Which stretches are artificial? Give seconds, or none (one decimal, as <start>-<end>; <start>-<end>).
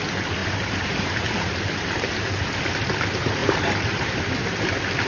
0.4-2.2; 3.4-4.2